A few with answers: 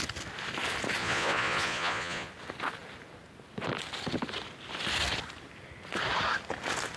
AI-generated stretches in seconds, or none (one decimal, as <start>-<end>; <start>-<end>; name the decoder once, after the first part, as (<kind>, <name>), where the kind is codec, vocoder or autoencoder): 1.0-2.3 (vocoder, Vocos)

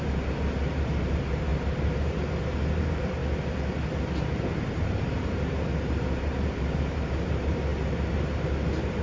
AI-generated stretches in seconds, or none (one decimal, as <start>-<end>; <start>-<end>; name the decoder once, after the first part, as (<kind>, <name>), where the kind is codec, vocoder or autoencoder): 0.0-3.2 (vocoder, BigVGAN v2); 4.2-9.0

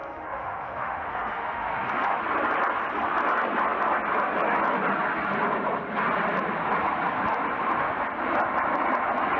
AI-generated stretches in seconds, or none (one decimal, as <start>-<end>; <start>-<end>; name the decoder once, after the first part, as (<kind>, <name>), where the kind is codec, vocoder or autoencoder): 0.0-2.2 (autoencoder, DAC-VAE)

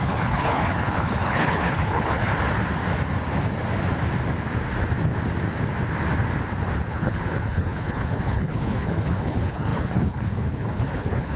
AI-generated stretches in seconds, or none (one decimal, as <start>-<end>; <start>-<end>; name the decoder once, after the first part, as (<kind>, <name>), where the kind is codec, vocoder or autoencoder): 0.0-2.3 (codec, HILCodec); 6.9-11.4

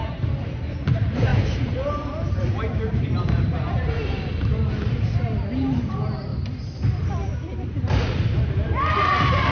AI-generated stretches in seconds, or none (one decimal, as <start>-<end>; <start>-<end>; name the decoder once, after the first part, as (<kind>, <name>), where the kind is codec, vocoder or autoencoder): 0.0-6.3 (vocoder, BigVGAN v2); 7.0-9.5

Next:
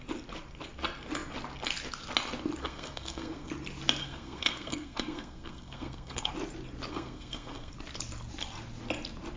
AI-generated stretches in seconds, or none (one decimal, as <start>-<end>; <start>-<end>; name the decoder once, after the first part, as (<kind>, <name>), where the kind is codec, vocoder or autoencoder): 2.6-3.5 (codec, SNAC); 4.0-6.3; 6.9-7.7

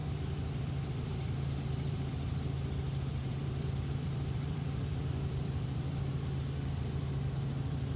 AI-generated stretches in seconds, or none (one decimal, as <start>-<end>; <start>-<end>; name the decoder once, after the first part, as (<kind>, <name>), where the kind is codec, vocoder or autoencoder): 0.0-2.1 (vocoder, BigVGAN v2); 3.2-6.1

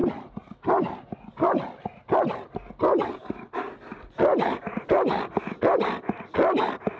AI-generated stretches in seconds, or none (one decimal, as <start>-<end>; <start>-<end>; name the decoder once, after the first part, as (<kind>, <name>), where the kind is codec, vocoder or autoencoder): none